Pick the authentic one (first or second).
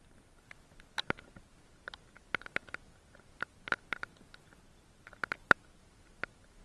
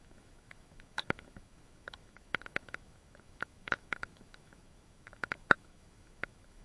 first